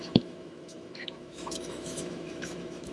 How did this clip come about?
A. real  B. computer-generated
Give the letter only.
B